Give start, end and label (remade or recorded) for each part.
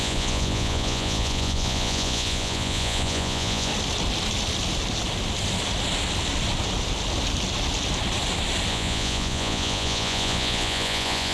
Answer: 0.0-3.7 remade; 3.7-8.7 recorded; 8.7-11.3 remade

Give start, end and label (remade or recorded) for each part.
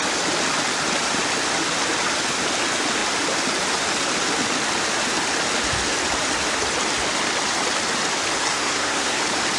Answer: 0.0-8.5 recorded; 8.5-9.2 remade; 9.2-9.6 recorded